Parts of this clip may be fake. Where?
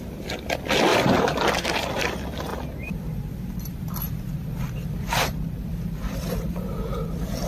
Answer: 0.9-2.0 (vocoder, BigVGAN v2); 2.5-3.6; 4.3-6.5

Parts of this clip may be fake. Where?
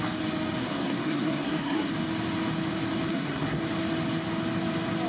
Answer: 0.6-1.9 (codec, SNAC); 3.1-3.6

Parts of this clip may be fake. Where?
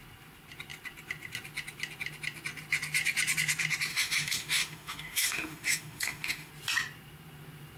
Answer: 3.9-6.5 (autoencoder, DAC-VAE)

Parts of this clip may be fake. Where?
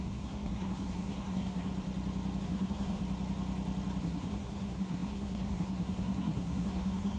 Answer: 0.0-1.7 (codec, SNAC); 2.4-3.0; 4.0-7.2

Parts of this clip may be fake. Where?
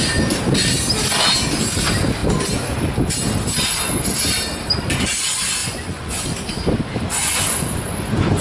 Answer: 5.6-6.2 (vocoder, Vocos); 7.2-8.4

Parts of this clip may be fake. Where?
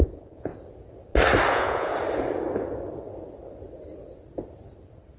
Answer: 0.0-0.5 (vocoder, Vocos); 1.5-1.9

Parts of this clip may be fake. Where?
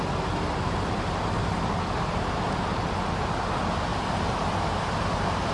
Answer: 1.4-2.2 (vocoder, BigVGAN v2); 3.9-5.5